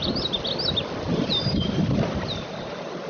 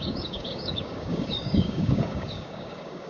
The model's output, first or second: second